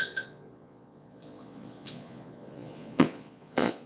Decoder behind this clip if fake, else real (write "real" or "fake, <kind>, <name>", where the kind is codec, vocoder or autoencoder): fake, vocoder, Vocos